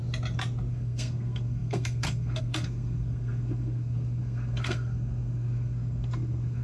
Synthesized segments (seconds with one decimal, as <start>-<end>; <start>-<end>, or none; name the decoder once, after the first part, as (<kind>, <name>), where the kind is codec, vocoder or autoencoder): 0.7-6.6 (codec, SNAC)